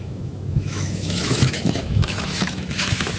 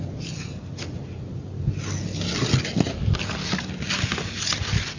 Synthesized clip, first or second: first